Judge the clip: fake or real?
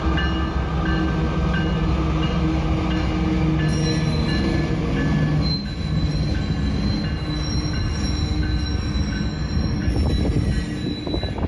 real